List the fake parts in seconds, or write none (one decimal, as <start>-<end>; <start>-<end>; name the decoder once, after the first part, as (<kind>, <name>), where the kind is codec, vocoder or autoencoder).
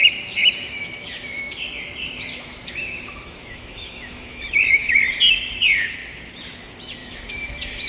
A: 0.4-1.6 (autoencoder, DAC-VAE); 2.3-5.0; 7.0-7.5